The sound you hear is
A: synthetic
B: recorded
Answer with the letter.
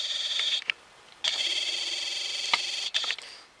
B